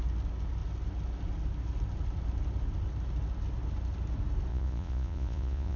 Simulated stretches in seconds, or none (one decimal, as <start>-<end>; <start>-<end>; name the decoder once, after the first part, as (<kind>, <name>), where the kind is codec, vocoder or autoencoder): 4.5-5.8 (vocoder, Vocos)